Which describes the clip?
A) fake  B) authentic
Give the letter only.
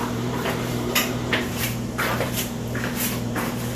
A